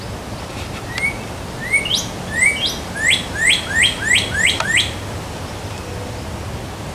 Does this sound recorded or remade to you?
recorded